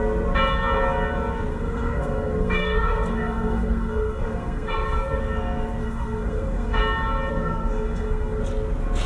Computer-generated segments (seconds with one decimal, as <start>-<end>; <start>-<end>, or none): 1.5-5.2; 5.8-6.8; 7.3-8.4